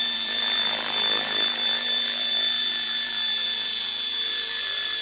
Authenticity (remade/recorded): remade